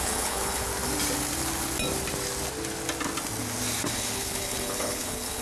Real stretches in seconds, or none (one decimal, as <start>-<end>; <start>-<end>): 0.7-3.9